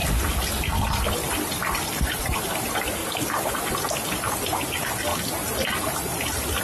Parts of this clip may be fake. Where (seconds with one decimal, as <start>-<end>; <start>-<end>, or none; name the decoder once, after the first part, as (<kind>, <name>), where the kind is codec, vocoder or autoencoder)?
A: 1.2-2.4 (vocoder, BigVGAN v2); 5.1-6.6